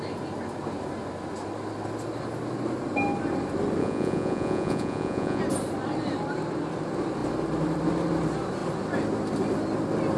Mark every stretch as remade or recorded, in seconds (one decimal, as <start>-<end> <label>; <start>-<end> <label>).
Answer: 0.0-3.8 recorded; 3.8-5.4 remade; 5.4-10.2 recorded